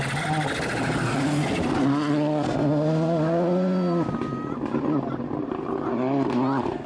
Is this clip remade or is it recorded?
recorded